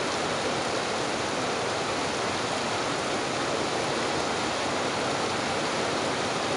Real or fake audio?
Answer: real